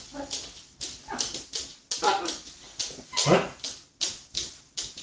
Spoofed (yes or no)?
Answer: no